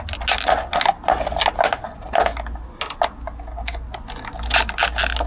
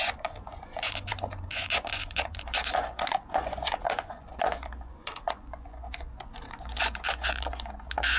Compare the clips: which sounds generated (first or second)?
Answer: second